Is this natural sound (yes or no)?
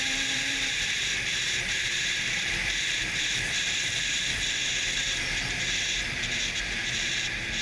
no